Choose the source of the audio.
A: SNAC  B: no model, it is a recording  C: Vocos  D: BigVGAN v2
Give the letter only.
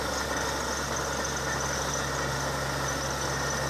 B